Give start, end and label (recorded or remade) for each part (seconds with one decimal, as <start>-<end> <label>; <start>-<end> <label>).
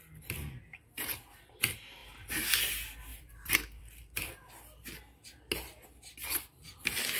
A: 0.0-3.1 recorded; 3.1-4.5 remade; 4.5-7.2 recorded